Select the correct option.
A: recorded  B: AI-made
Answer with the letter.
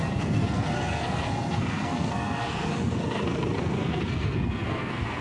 B